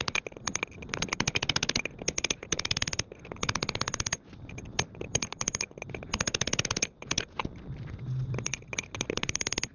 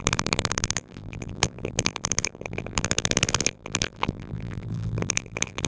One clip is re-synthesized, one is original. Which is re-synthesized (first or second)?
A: second